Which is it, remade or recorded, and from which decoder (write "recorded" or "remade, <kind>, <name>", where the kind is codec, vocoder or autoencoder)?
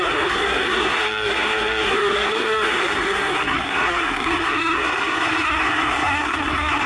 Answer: remade, codec, SNAC